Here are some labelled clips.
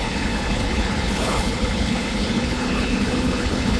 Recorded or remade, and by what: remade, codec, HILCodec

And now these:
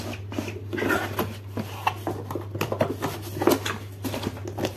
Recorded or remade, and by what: recorded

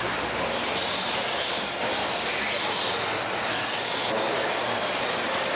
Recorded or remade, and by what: recorded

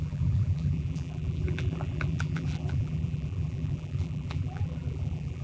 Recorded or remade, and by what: remade, vocoder, BigVGAN v2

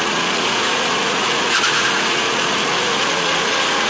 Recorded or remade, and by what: remade, vocoder, Vocos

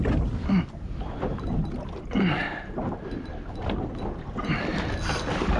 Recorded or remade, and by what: recorded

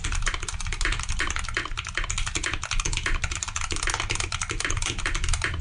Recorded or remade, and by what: recorded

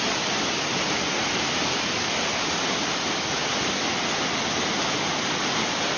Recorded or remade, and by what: recorded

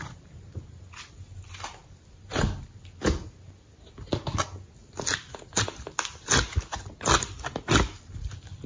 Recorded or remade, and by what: recorded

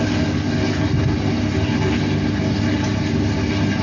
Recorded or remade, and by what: recorded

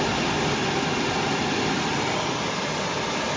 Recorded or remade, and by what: recorded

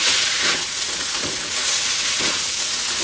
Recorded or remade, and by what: remade, vocoder, Vocos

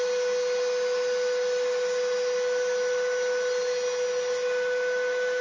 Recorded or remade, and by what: recorded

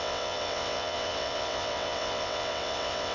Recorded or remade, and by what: remade, vocoder, WaveNeXt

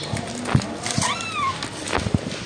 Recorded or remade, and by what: recorded